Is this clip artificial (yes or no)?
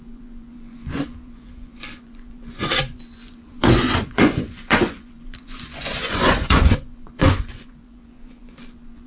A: yes